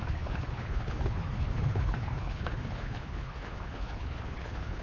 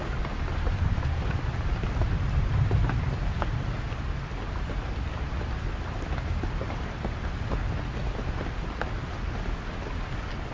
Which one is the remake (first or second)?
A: first